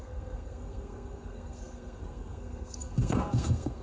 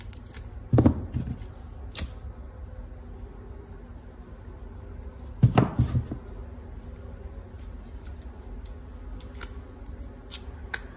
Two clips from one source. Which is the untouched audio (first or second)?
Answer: second